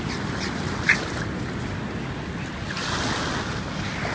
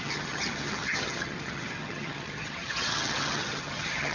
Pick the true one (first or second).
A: first